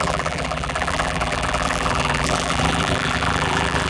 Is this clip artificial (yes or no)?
yes